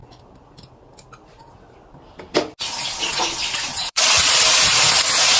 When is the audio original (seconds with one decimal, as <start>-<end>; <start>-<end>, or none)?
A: 0.0-3.7; 4.3-5.4